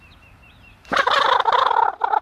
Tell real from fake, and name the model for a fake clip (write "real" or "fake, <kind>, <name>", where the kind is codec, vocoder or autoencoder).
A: real